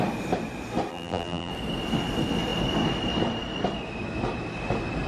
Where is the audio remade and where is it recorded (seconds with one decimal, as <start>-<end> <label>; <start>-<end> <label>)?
0.0-0.9 recorded; 0.9-1.5 remade; 1.5-5.1 recorded